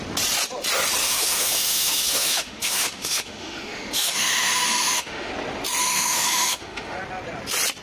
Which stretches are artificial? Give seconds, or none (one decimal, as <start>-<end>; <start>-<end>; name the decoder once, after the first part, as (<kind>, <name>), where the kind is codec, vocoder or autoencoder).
1.0-5.3 (autoencoder, DAC-VAE); 5.8-7.0